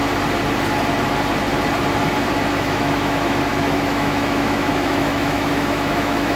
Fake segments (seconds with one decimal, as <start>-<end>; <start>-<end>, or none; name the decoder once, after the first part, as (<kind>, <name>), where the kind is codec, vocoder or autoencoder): 2.5-6.4 (autoencoder, DAC-VAE)